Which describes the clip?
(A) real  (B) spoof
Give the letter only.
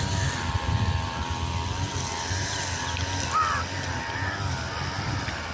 A